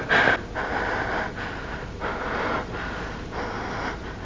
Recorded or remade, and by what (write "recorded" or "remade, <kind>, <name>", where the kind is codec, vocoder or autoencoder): recorded